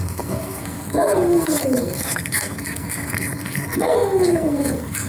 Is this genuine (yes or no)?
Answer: no